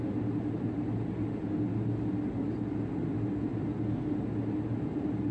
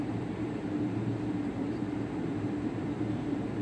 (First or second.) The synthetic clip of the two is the second